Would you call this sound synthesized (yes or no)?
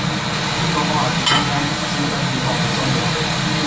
no